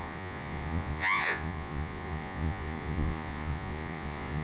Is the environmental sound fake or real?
fake